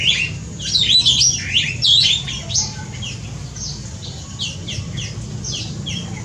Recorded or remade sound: recorded